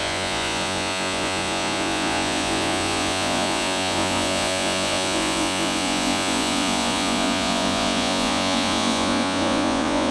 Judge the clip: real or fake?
fake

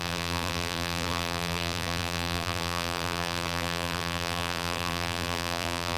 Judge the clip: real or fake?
fake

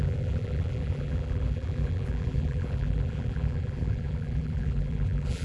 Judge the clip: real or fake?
fake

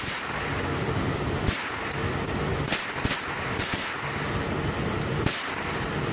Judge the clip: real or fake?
real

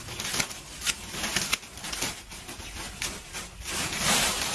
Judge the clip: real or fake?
real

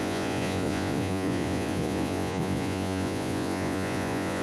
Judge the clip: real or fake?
fake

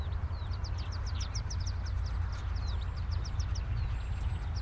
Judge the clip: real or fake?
real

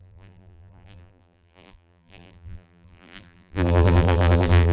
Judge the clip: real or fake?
fake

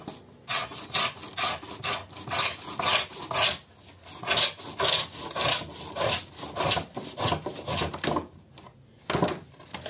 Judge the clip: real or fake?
real